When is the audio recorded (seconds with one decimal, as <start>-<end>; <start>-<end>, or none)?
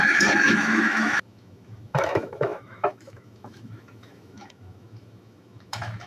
none